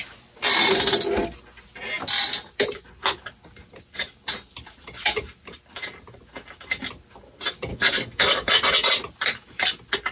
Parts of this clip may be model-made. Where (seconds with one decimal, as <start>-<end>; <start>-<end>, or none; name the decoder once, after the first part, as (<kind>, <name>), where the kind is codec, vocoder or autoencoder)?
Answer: 7.7-8.5 (codec, DAC)